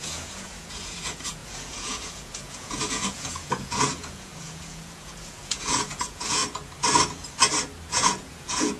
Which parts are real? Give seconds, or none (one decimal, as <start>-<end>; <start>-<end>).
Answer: 6.4-7.9